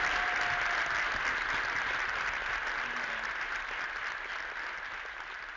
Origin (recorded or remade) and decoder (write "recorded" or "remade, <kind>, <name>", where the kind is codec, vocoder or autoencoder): recorded